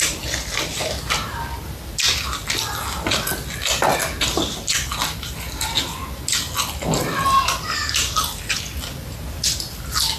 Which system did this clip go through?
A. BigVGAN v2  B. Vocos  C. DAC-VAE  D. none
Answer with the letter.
D